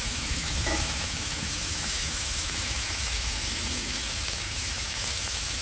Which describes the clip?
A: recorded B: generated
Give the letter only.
B